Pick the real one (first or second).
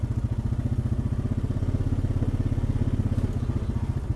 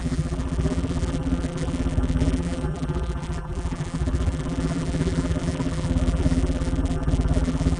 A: first